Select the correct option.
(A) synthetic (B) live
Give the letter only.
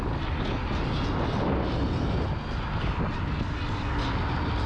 B